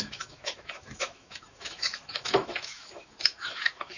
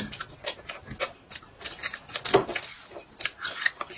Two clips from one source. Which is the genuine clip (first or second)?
second